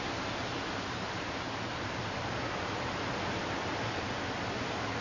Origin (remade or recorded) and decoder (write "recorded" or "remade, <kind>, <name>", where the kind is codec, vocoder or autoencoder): recorded